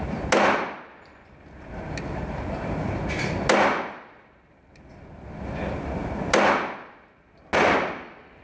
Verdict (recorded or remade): recorded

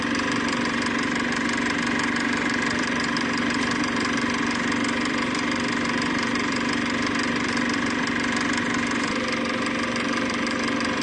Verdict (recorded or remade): remade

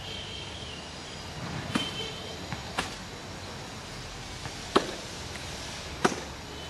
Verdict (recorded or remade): recorded